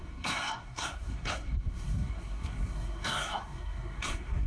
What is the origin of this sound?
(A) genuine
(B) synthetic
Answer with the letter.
B